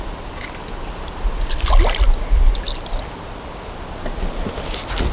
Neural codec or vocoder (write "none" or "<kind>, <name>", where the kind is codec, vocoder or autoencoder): none